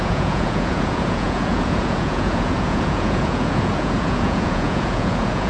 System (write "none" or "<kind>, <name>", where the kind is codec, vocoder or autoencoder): vocoder, Vocos